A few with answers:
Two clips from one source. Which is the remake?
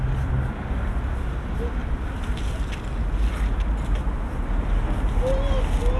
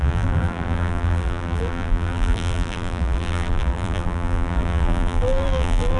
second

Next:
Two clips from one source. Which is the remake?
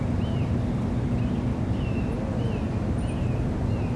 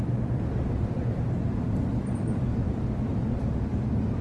second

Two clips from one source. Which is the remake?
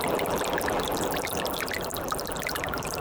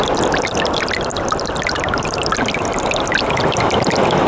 first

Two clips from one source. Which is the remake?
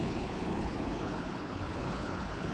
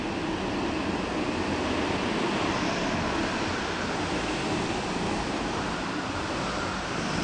first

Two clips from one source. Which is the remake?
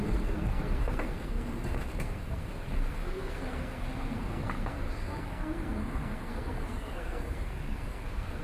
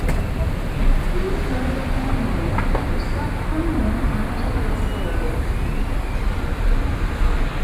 first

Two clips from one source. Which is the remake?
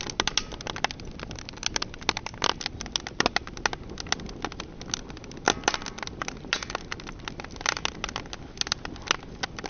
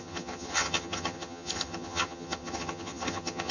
second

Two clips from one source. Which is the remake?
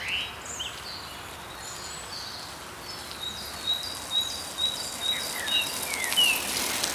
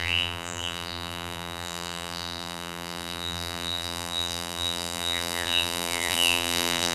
second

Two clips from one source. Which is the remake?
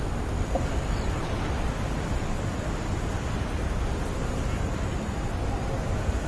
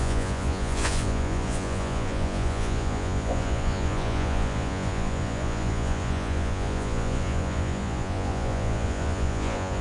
second